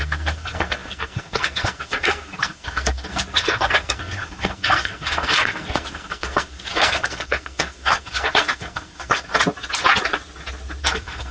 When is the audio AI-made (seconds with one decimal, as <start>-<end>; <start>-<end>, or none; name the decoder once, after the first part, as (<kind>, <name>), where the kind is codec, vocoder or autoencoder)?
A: 0.0-9.3 (codec, SNAC); 10.8-11.3